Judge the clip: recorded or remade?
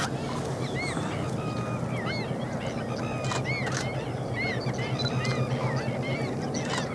recorded